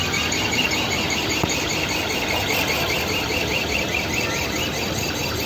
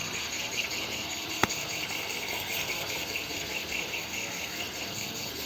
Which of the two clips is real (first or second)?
first